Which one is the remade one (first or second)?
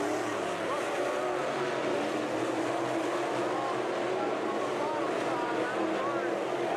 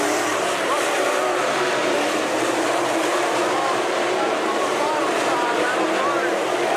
second